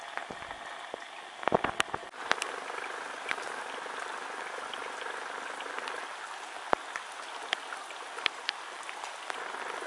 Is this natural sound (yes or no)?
yes